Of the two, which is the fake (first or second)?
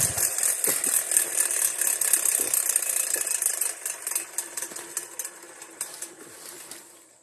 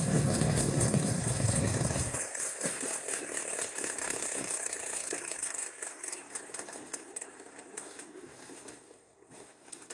second